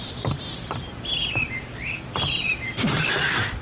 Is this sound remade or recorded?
recorded